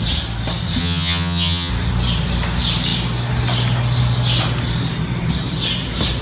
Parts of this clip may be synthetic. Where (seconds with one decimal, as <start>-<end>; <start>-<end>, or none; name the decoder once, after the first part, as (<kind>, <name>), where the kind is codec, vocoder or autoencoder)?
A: 0.8-1.7 (vocoder, HiFi-GAN)